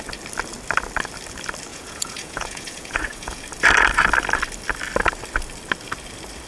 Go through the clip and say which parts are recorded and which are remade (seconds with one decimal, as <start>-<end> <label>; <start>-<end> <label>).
0.0-1.7 recorded; 1.7-3.4 remade; 3.4-6.5 recorded